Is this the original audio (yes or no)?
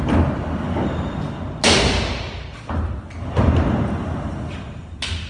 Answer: yes